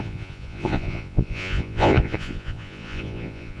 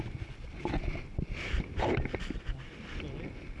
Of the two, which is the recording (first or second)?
second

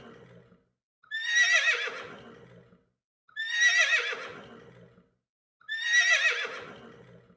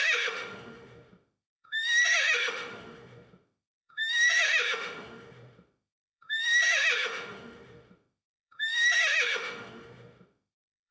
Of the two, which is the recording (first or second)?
first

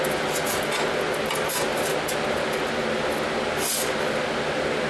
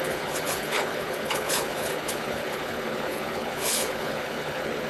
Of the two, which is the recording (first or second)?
first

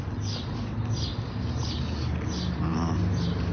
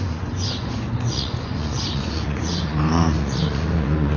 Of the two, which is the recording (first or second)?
first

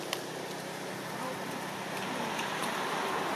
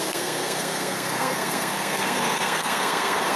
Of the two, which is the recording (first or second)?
first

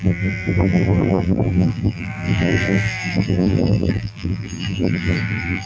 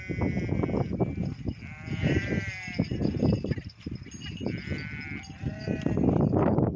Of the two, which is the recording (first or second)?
second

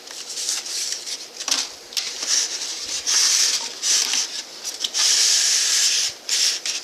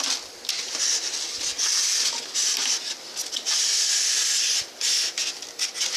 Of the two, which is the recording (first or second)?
second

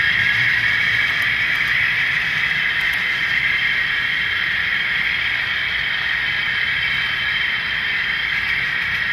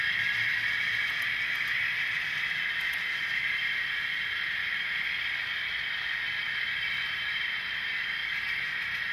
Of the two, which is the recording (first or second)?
second